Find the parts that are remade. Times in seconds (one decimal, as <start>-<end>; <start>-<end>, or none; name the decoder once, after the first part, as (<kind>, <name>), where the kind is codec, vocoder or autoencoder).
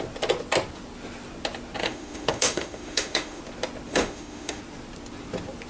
1.8-3.4 (autoencoder, DAC-VAE); 3.9-4.6